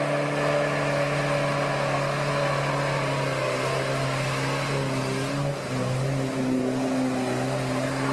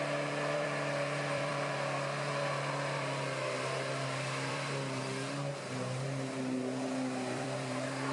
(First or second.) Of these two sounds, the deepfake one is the second